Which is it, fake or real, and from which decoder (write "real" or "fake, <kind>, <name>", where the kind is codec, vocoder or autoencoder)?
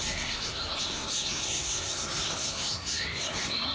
fake, codec, SNAC